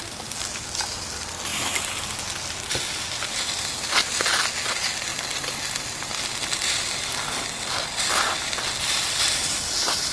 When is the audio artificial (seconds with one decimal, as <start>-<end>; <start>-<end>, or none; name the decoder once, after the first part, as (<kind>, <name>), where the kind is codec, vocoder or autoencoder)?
none